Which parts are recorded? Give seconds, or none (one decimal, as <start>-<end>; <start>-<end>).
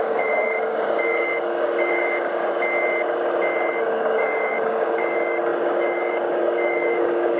2.4-3.8